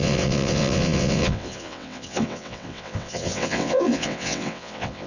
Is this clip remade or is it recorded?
remade